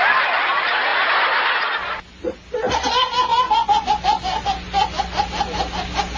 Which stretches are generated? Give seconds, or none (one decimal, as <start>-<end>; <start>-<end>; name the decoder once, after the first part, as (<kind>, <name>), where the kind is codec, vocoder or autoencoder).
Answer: none